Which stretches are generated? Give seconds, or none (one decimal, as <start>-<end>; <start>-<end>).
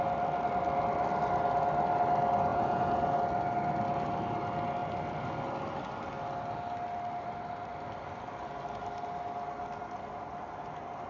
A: 2.5-3.2